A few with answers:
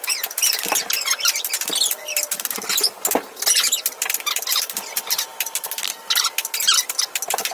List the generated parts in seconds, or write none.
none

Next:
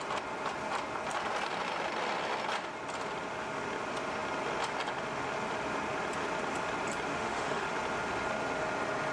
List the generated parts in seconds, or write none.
7.1-7.7 (autoencoder, DAC-VAE)

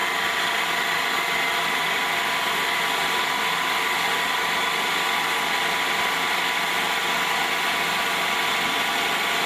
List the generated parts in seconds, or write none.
none

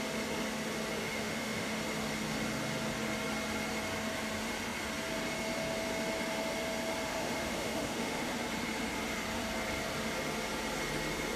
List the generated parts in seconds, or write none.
1.0-1.8 (autoencoder, DAC-VAE); 7.1-8.3

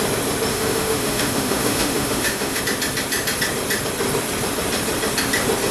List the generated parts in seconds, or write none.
0.5-2.6 (autoencoder, DAC-VAE)

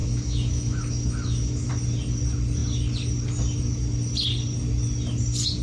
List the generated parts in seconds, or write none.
0.0-1.7 (autoencoder, DAC-VAE)

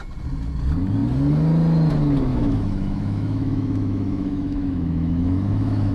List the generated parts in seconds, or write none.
2.3-5.9 (autoencoder, DAC-VAE)